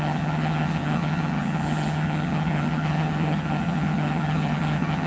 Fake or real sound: fake